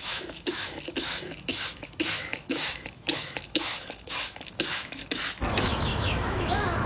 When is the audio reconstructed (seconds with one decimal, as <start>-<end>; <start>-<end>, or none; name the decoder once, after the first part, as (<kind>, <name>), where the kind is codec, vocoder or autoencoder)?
0.0-5.0 (autoencoder, DAC-VAE); 5.5-6.9